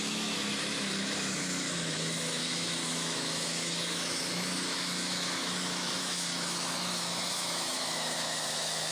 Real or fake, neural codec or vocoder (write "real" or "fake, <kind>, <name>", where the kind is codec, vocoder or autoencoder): fake, autoencoder, DAC-VAE